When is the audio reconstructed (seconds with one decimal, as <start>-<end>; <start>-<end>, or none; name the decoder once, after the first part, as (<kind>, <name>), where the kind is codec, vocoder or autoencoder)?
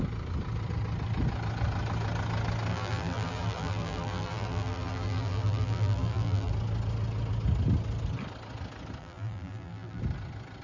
2.7-6.5 (vocoder, BigVGAN v2); 9.0-10.0